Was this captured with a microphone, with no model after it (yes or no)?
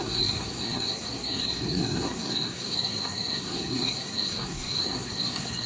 no